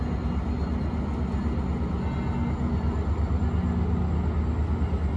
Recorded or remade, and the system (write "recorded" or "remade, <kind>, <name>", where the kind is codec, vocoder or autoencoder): recorded